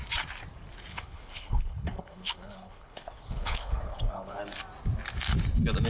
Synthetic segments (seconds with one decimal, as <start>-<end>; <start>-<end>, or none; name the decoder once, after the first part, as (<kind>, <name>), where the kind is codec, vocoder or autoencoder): 0.9-4.4 (codec, HILCodec)